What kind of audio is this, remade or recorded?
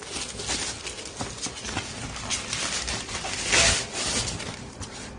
recorded